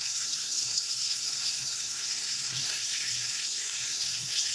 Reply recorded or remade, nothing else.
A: remade